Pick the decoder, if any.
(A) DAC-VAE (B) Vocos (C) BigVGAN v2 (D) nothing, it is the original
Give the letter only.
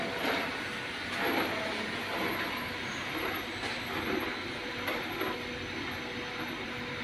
D